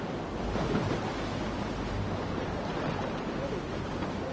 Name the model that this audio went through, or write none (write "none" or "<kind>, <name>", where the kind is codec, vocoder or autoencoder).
none